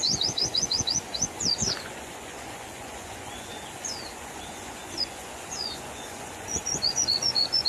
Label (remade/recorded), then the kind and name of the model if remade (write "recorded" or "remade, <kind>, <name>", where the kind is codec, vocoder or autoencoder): remade, vocoder, Vocos